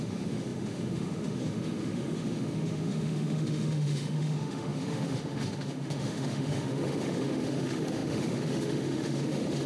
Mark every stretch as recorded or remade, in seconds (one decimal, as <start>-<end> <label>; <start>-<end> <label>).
0.0-9.7 remade